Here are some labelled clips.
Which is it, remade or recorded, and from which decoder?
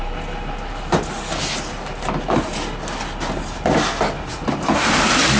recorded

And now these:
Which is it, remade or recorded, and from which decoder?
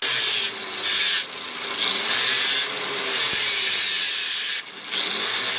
recorded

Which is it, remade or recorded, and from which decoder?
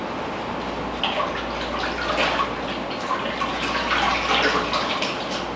recorded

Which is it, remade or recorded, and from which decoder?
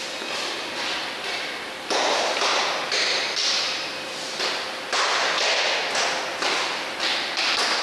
recorded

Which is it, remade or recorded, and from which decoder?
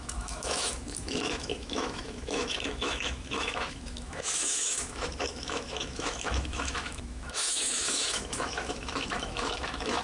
remade, autoencoder, DAC-VAE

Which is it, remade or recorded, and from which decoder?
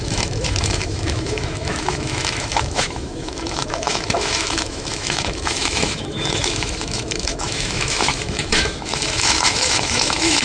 remade, autoencoder, DAC-VAE